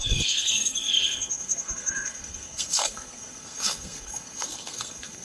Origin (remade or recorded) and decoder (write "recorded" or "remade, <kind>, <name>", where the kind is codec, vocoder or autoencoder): remade, codec, SNAC